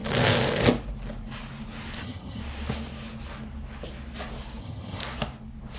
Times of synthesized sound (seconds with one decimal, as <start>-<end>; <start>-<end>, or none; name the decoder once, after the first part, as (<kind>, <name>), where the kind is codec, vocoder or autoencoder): 2.0-2.4 (vocoder, HiFi-GAN); 4.6-5.0